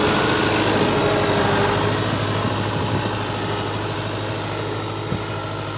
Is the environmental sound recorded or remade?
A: recorded